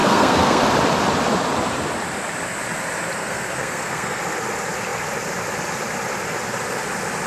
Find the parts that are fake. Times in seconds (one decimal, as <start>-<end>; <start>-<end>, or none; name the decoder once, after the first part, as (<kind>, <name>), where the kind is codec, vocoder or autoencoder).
0.0-0.6 (codec, SNAC); 3.2-4.2